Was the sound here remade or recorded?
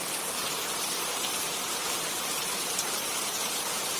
remade